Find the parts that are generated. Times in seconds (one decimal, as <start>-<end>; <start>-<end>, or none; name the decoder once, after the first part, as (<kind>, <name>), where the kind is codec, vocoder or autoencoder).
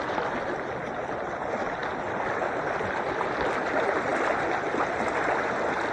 none